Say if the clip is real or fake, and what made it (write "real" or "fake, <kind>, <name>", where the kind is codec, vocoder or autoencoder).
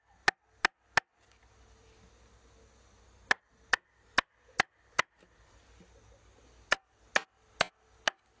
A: real